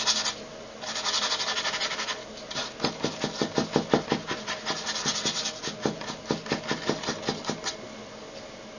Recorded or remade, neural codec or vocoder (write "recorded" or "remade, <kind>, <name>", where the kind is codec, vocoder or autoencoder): recorded